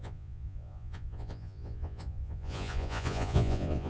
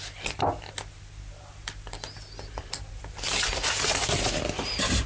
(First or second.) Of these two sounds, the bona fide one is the second